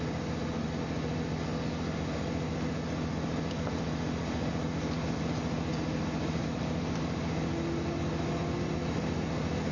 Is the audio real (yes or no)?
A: yes